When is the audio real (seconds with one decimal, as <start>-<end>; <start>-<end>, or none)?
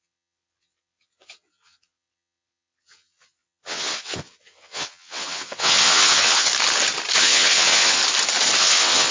6.5-7.2; 8.0-8.6